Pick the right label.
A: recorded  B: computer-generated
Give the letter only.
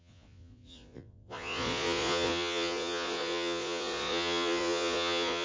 B